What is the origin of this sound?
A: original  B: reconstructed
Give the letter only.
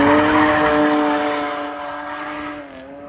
A